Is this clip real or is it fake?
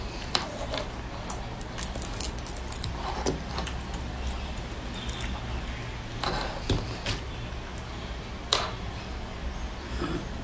real